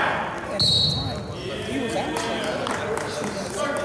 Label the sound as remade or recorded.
recorded